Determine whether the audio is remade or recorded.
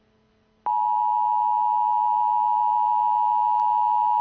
recorded